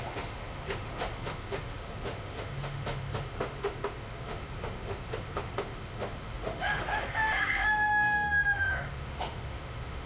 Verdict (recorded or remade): remade